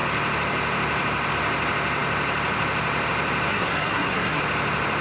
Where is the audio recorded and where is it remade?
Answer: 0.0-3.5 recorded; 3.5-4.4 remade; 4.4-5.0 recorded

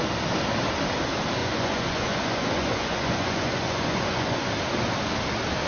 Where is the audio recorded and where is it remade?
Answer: 0.0-1.4 recorded; 1.4-4.5 remade; 4.5-5.7 recorded

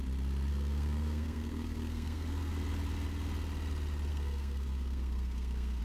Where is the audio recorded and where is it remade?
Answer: 0.0-0.5 recorded; 0.5-2.5 remade; 2.5-4.1 recorded; 4.1-5.8 remade

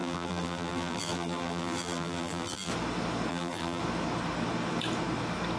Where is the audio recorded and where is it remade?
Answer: 0.0-2.7 remade; 2.7-3.3 recorded; 3.3-3.8 remade; 3.8-5.6 recorded

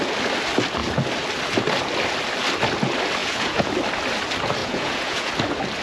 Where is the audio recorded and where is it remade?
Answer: 0.0-3.2 recorded; 3.2-3.7 remade; 3.7-4.6 recorded; 4.6-5.3 remade; 5.3-5.8 recorded